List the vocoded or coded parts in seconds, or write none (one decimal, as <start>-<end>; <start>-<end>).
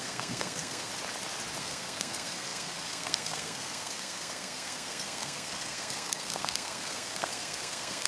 0.0-0.9; 1.6-8.1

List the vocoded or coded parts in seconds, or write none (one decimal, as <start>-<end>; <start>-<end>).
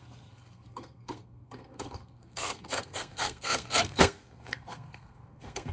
0.0-5.7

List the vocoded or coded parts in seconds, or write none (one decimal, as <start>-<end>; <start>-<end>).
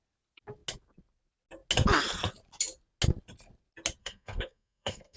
4.0-5.2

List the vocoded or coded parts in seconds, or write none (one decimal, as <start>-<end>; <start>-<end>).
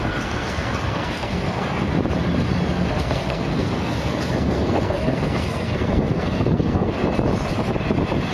0.0-1.9; 2.9-7.0